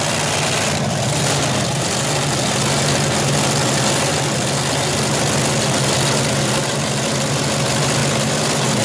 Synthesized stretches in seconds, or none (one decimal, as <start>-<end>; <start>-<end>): none